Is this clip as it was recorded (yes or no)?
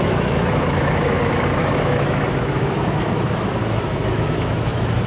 no